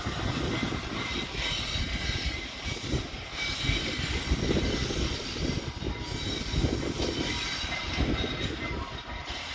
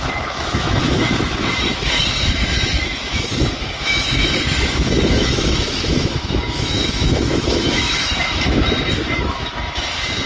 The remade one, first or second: second